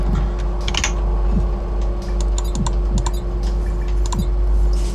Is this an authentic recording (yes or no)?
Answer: yes